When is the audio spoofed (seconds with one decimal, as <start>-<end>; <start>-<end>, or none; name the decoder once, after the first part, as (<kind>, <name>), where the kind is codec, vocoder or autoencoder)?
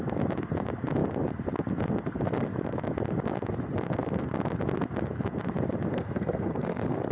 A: 5.9-7.1 (codec, SNAC)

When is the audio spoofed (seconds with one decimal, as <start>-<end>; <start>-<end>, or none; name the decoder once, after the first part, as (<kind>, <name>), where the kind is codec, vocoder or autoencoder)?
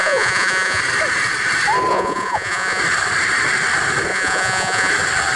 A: 0.0-0.8 (vocoder, Vocos); 1.9-2.8; 4.1-4.9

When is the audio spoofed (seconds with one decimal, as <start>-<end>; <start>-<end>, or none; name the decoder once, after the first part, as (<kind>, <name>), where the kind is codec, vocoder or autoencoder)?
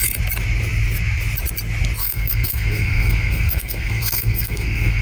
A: 2.0-5.0 (codec, SNAC)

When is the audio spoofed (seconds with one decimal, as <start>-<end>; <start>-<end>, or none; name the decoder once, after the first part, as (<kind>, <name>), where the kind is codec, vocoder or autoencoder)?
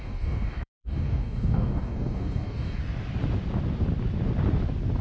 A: 0.0-2.8 (codec, DAC)